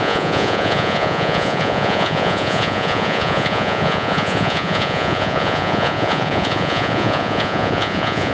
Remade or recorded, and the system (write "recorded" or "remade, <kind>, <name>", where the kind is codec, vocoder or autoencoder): remade, vocoder, Vocos